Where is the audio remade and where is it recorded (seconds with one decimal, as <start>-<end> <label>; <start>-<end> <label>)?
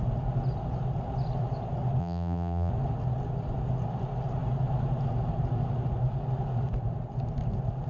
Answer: 0.0-2.0 recorded; 2.0-2.7 remade; 2.7-7.9 recorded